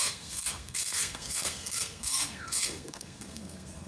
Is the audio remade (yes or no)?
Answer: yes